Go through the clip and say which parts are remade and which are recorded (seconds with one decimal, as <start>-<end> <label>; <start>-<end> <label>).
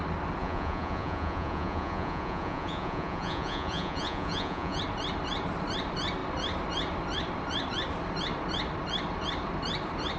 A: 0.0-0.4 recorded; 0.4-4.8 remade; 4.8-10.2 recorded